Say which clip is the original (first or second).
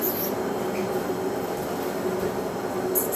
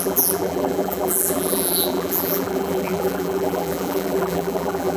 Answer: first